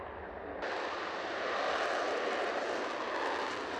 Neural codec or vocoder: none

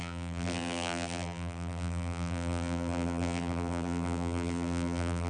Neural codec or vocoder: vocoder, BigVGAN v2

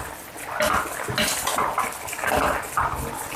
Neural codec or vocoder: none